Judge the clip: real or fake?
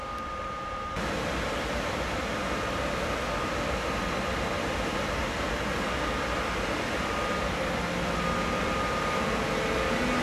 real